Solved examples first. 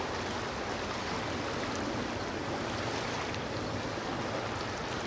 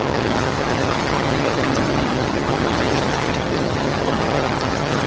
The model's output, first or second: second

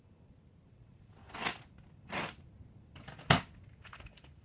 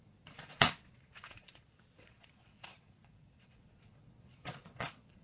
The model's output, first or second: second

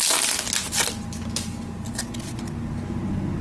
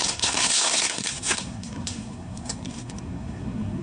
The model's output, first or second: second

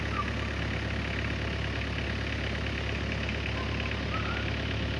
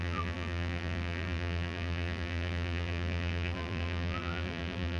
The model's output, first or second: second